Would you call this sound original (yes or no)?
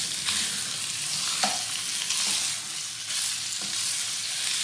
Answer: yes